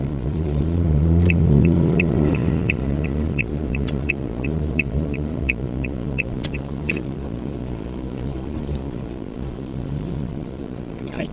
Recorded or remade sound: remade